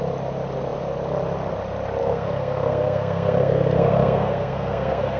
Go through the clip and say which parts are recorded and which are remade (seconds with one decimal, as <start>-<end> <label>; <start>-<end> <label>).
0.0-2.0 recorded; 2.0-5.2 remade